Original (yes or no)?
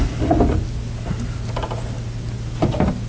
yes